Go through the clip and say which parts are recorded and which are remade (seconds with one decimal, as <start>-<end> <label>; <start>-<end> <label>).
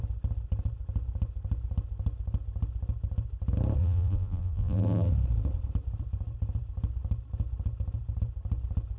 0.0-3.8 recorded; 3.8-5.1 remade; 5.1-9.0 recorded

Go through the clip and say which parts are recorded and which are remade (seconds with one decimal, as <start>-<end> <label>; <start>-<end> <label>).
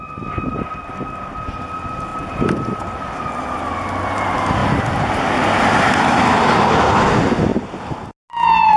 0.0-2.1 recorded; 2.1-3.3 remade; 3.3-4.6 recorded; 4.6-5.2 remade; 5.2-7.5 recorded; 7.5-8.1 remade; 8.1-8.8 recorded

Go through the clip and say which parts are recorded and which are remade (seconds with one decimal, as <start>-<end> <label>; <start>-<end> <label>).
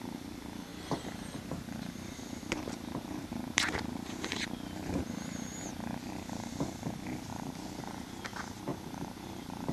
0.0-0.7 recorded; 0.7-5.6 remade; 5.6-7.3 recorded; 7.3-7.8 remade; 7.8-8.7 recorded; 8.7-9.7 remade